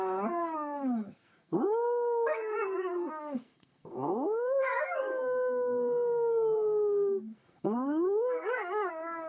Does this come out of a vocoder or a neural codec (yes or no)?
yes